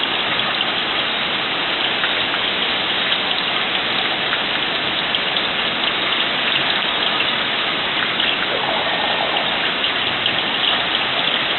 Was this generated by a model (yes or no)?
no